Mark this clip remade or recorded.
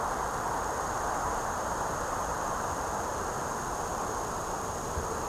recorded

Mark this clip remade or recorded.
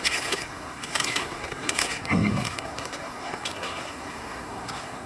remade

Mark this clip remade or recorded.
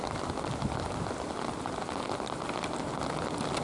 recorded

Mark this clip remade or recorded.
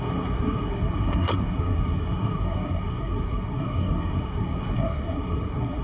remade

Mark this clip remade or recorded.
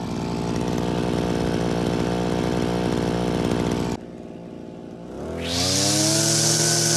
recorded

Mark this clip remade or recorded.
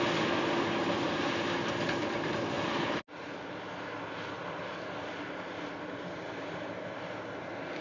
recorded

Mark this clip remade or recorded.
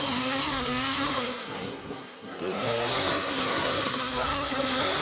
remade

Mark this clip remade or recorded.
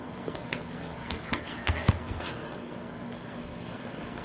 remade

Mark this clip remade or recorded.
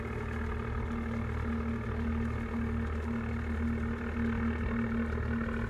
recorded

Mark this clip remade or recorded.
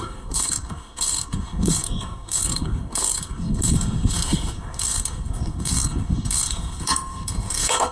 remade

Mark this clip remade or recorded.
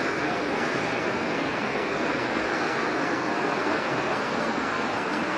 remade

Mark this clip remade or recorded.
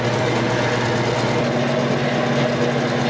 recorded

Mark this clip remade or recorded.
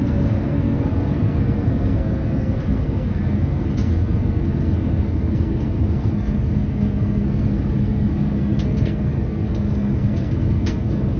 remade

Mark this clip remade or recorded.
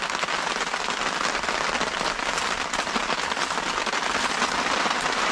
recorded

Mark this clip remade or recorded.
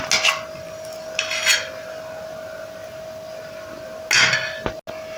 recorded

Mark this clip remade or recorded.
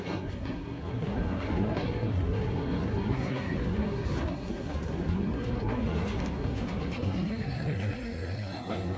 remade